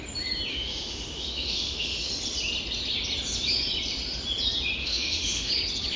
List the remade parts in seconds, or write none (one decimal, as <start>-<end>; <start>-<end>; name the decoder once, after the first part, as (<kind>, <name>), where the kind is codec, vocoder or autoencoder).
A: 0.5-2.1 (autoencoder, DAC-VAE); 4.8-5.5